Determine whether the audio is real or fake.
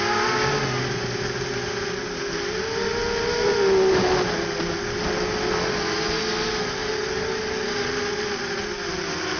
real